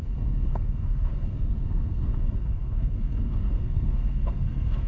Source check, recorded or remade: remade